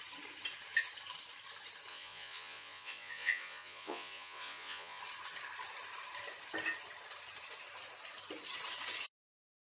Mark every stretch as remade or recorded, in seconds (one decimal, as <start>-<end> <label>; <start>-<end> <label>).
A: 0.0-1.9 recorded; 1.9-5.0 remade; 5.0-9.6 recorded